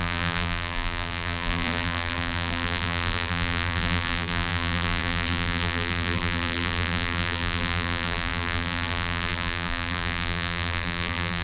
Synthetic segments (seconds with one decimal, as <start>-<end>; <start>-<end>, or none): 0.0-11.4